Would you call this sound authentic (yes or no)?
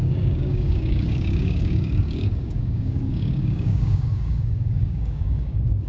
no